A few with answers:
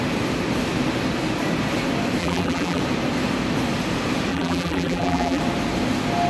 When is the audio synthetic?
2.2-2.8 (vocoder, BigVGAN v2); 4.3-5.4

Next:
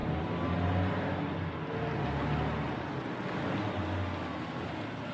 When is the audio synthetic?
none